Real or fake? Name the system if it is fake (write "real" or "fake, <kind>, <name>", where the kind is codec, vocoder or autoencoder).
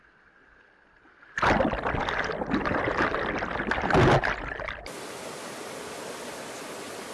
real